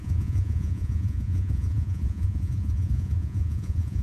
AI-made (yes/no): yes